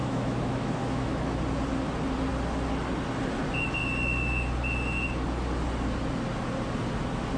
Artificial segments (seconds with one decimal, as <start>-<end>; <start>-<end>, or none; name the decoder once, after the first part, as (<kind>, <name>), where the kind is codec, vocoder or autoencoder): 0.0-1.4 (autoencoder, DAC-VAE)